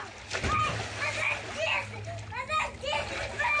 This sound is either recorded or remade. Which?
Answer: recorded